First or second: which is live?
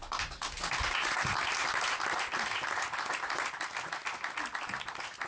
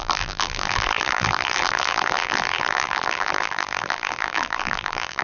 first